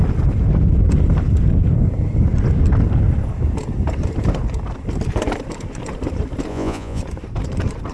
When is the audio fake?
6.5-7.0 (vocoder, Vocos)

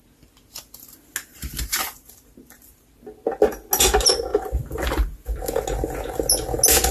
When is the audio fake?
1.3-2.9 (vocoder, BigVGAN v2)

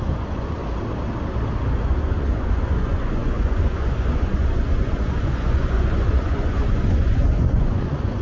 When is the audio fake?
0.0-0.6 (vocoder, Vocos); 1.8-8.2

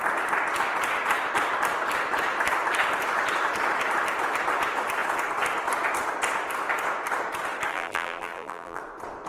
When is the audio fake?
7.7-8.8 (vocoder, BigVGAN v2)

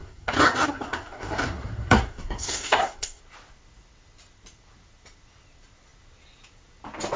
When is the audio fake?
0.0-3.2 (codec, SNAC)